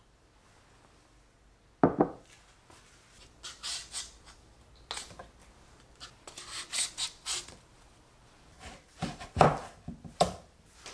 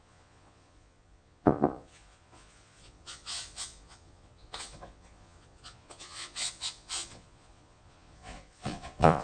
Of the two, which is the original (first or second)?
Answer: first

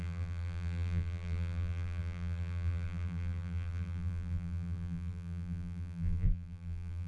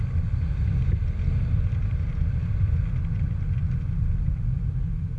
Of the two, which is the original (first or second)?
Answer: second